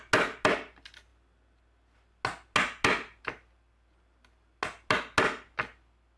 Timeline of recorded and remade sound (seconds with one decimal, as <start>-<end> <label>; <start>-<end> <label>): 0.0-6.2 recorded